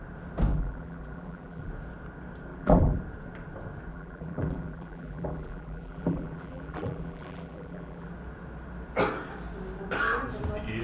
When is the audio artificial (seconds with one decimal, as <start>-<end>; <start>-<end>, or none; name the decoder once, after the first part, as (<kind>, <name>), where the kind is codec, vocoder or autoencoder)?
0.5-1.7 (vocoder, BigVGAN v2); 2.5-3.0; 3.9-8.1